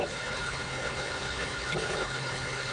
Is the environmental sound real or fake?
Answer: fake